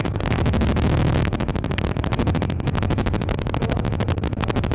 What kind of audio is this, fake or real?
real